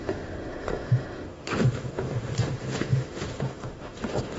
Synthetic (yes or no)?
yes